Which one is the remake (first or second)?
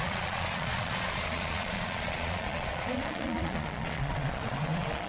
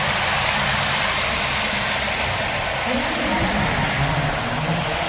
first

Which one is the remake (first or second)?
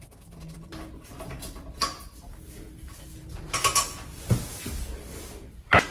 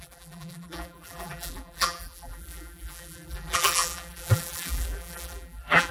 second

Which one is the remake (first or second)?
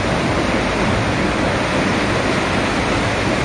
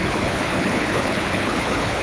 second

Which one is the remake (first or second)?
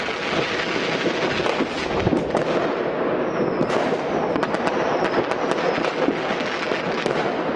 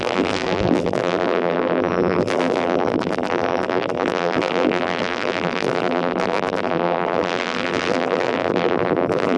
second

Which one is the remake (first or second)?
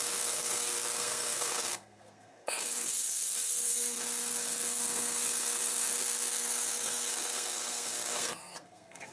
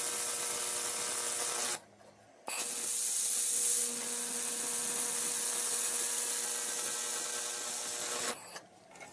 first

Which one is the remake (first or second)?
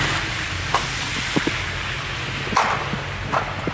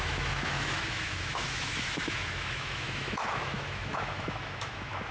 second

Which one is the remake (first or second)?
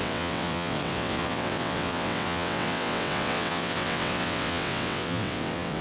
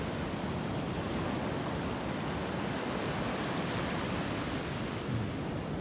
first